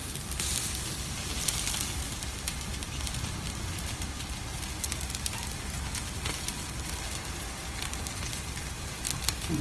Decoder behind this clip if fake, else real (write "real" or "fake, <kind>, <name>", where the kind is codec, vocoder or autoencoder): real